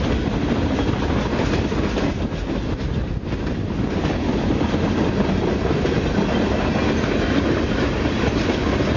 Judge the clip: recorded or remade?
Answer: recorded